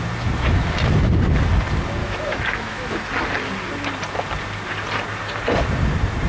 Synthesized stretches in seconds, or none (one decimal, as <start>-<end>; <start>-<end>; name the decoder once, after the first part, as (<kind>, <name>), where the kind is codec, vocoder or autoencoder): 2.0-3.1 (autoencoder, DAC-VAE)